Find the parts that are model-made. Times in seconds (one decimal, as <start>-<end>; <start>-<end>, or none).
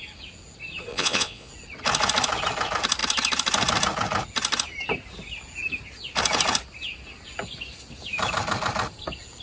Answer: 0.9-1.5